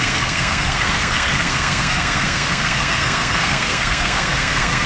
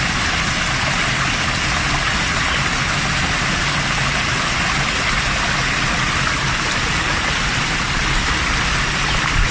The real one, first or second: second